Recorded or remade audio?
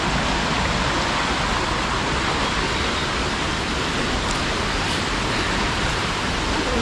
recorded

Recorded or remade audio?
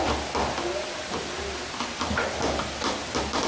recorded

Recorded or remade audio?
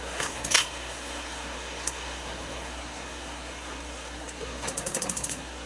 remade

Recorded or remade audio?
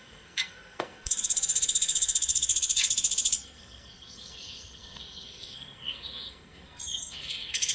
remade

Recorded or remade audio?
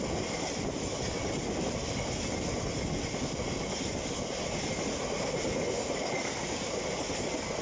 recorded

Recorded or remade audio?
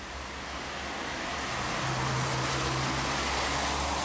recorded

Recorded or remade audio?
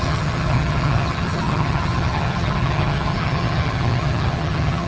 remade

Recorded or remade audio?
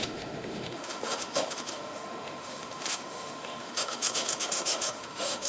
remade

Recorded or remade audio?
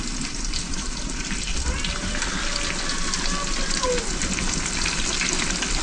recorded